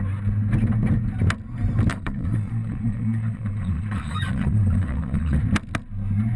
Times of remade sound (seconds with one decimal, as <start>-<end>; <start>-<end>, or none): 1.9-5.4